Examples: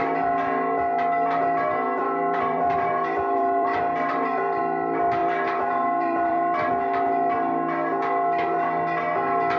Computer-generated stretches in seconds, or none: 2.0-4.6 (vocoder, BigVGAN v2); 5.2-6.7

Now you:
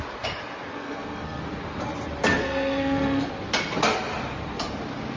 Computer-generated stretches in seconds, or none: 0.7-1.4 (codec, SNAC); 2.4-3.3

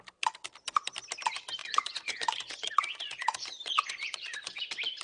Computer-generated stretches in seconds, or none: 1.6-4.6 (vocoder, Vocos)

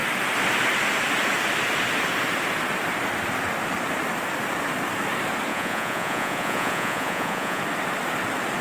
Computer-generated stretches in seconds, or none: 5.5-7.6 (vocoder, Vocos)

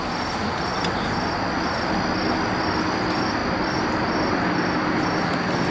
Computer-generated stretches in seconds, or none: none

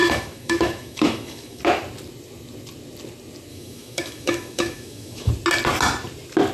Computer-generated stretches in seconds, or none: 0.0-1.6 (autoencoder, DAC-VAE); 3.5-5.3

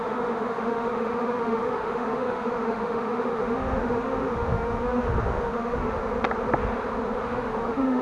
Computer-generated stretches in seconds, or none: 0.0-6.0 (autoencoder, DAC-VAE); 7.2-8.0